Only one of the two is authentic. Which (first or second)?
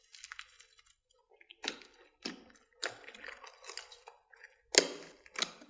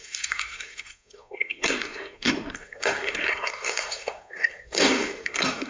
first